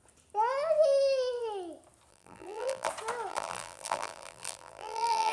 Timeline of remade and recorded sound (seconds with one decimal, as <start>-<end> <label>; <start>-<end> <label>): 0.0-2.1 recorded; 2.1-2.9 remade; 2.9-3.3 recorded; 3.3-5.3 remade